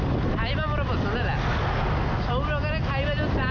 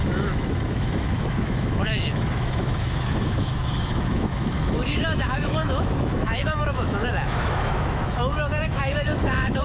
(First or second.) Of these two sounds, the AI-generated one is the second